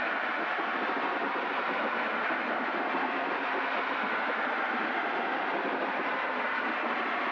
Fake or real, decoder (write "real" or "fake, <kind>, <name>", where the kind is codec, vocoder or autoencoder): real